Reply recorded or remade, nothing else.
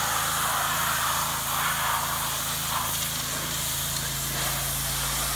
recorded